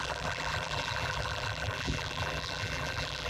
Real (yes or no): no